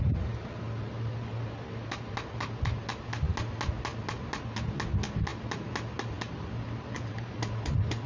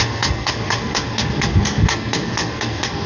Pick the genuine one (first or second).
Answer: first